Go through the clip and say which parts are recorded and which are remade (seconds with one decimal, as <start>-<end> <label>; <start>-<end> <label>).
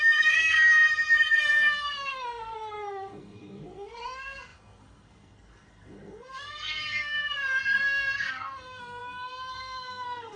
0.0-10.4 remade